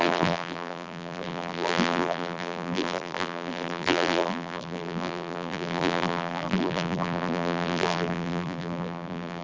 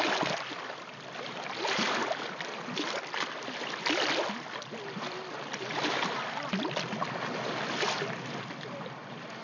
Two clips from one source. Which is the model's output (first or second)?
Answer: first